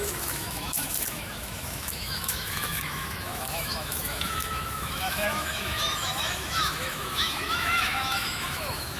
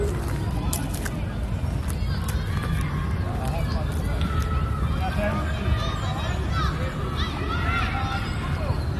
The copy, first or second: first